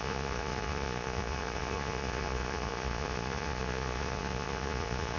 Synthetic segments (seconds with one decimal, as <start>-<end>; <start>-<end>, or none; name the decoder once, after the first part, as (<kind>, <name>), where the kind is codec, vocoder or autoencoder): 0.0-5.2 (vocoder, Vocos)